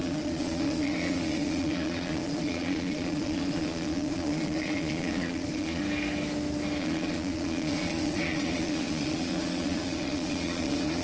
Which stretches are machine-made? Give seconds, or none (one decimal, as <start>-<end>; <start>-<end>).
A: 0.0-5.8; 6.8-11.0